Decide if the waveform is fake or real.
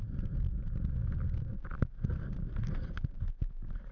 real